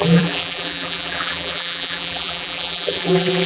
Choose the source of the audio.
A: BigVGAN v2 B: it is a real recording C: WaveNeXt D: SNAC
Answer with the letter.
A